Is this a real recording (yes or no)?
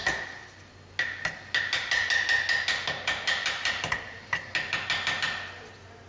yes